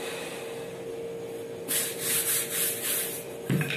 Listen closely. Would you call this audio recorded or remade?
recorded